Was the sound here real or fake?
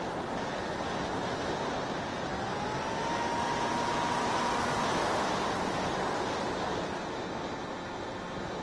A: real